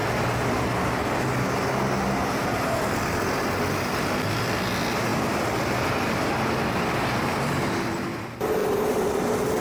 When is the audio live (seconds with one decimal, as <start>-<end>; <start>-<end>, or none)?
0.0-9.6